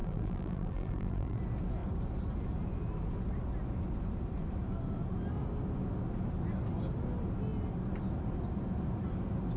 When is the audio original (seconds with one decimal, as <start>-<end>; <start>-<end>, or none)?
1.4-9.6

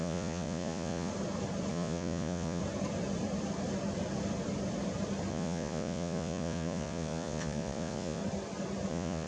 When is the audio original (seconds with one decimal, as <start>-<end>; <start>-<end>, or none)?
1.1-1.7; 2.6-5.3; 8.2-8.9

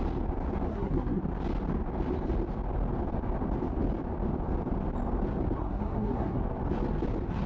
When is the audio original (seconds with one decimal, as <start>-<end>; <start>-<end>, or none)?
0.0-0.7; 1.2-5.6; 6.4-7.5